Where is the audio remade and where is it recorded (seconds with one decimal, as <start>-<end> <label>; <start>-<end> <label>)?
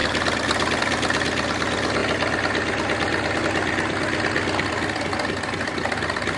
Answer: 0.0-0.8 remade; 0.8-6.4 recorded